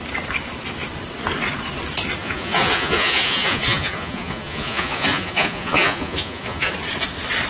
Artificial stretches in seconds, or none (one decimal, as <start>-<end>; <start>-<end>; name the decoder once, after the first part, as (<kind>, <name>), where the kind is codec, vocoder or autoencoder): 2.2-6.7 (vocoder, Vocos)